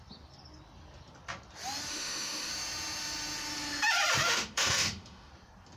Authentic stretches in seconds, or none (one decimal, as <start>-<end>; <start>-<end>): 0.0-1.9; 2.5-4.2; 5.3-5.8